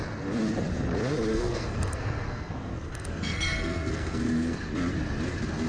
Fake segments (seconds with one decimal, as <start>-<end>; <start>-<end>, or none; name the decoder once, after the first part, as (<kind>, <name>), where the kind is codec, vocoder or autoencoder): 1.3-4.7 (codec, SNAC)